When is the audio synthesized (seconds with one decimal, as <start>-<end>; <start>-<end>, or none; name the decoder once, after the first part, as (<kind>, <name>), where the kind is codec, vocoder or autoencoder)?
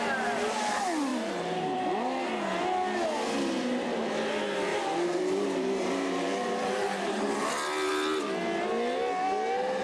1.1-2.3 (vocoder, BigVGAN v2); 4.7-7.3